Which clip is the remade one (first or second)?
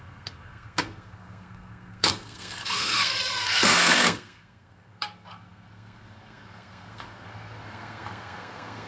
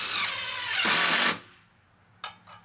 first